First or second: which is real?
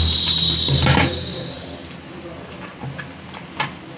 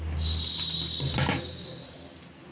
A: first